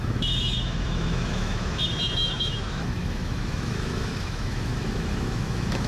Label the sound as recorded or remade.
remade